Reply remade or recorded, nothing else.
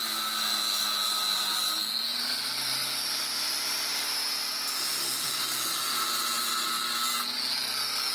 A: recorded